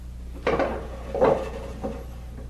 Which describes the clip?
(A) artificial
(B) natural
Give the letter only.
B